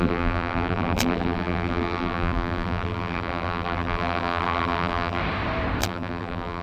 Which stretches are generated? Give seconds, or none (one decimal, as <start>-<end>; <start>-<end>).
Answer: 0.0-5.2; 5.8-6.6